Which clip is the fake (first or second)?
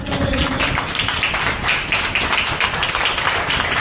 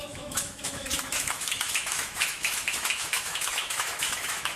second